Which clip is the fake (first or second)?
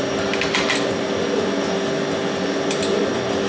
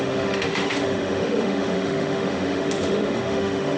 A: second